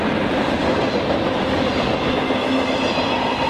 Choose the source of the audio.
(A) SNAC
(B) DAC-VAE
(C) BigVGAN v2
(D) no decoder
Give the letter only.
D